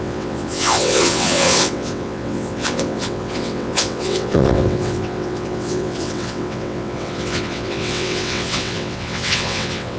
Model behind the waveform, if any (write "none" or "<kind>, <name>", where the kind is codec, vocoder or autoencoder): vocoder, WaveNeXt